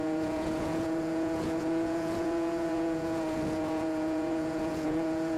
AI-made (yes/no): yes